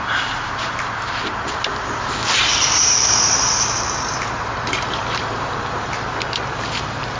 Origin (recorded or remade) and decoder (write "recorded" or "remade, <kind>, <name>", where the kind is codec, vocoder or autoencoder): remade, vocoder, BigVGAN v2